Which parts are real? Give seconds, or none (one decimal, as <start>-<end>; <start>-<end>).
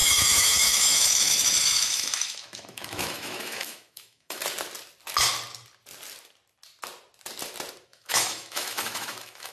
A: 4.4-7.9